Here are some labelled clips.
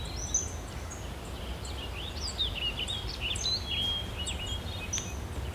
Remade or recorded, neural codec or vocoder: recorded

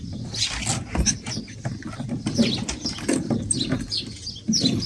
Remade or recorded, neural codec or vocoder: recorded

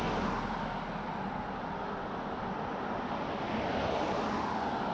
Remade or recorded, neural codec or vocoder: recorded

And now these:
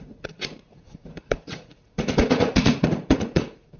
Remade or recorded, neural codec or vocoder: remade, vocoder, Vocos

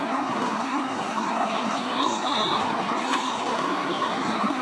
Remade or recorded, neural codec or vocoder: remade, codec, SNAC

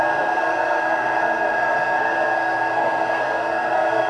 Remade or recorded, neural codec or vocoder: remade, codec, SNAC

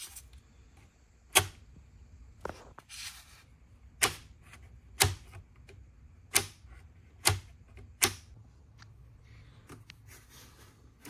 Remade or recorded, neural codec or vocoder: recorded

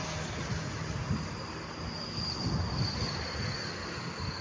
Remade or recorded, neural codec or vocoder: recorded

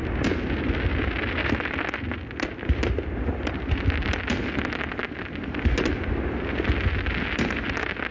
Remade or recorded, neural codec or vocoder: recorded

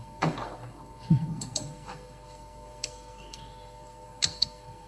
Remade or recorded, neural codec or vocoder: remade, codec, SNAC